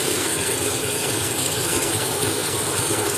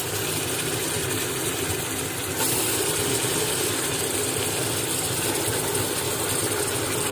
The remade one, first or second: first